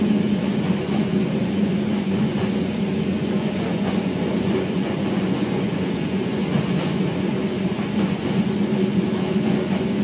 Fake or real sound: fake